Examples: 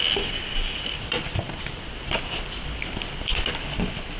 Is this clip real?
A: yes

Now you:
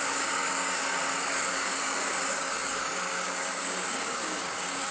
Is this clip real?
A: no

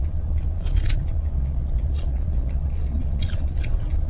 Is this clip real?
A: no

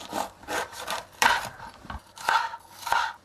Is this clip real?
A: no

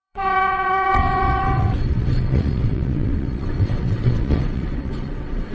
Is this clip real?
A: no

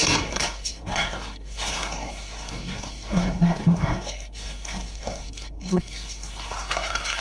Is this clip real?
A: no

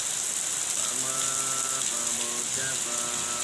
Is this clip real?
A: yes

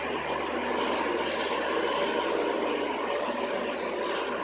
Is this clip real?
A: yes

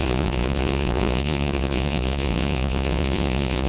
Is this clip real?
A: no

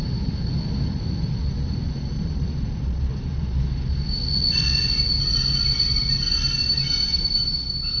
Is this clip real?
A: yes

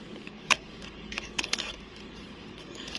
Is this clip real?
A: no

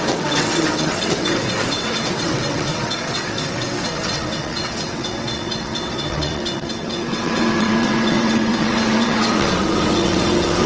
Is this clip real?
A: no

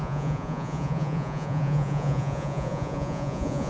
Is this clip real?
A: no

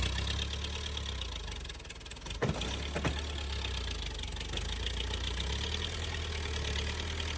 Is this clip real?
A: yes